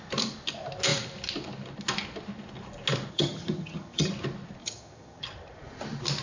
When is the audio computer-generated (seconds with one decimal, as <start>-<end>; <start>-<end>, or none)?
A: 3.1-4.1; 4.6-5.2

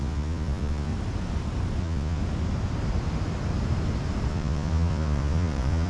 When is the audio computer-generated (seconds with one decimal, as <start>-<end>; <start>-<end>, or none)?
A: 0.0-0.9; 1.8-2.2; 4.3-5.9

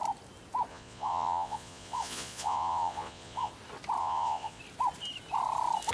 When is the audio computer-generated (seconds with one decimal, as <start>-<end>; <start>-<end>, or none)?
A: 0.7-3.5; 4.0-4.6

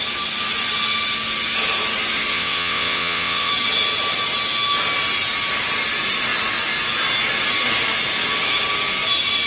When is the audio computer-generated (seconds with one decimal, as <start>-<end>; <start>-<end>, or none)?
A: 2.3-3.5

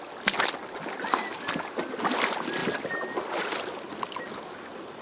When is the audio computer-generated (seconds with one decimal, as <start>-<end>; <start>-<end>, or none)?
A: none

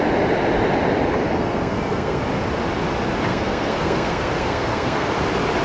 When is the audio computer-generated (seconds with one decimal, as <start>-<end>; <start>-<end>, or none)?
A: 1.3-2.2; 3.3-5.1

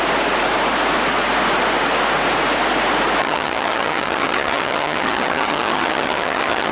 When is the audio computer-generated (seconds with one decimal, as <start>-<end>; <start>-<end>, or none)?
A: 3.2-6.7